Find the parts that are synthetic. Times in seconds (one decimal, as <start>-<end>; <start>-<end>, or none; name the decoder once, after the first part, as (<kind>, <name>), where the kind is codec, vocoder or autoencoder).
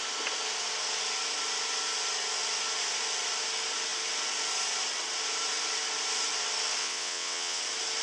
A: 6.8-7.6 (vocoder, WaveNeXt)